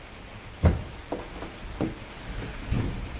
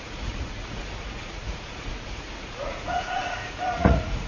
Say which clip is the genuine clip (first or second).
first